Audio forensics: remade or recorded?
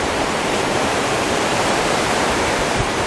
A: remade